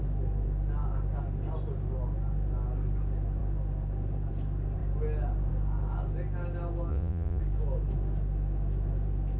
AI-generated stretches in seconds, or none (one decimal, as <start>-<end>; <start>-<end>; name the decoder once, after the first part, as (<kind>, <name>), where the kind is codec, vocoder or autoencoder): 6.9-7.4 (vocoder, Vocos)